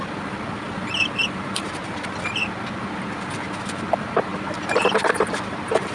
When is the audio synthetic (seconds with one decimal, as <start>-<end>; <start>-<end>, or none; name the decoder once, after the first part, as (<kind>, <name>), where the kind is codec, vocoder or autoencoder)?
1.2-1.9 (vocoder, BigVGAN v2); 4.3-5.9